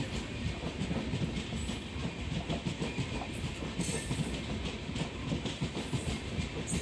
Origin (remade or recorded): remade